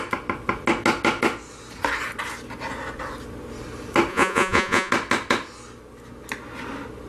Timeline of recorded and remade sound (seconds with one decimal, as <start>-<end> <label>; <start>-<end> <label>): 0.0-4.1 recorded; 4.1-4.9 remade; 4.9-7.1 recorded